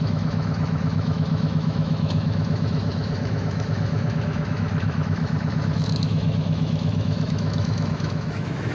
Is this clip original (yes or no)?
no